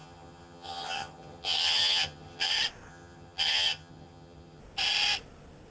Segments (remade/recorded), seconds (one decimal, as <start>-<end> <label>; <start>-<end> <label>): 0.0-2.5 remade; 2.5-2.9 recorded; 2.9-4.6 remade; 4.6-5.7 recorded